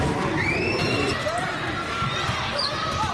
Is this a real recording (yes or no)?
no